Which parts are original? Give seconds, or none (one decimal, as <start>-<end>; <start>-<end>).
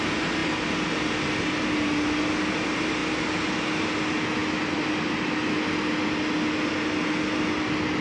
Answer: 0.0-8.0